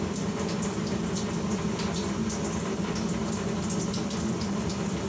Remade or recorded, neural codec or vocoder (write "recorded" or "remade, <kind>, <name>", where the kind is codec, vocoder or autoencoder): recorded